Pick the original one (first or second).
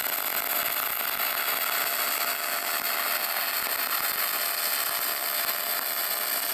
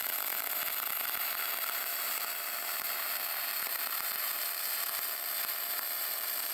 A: first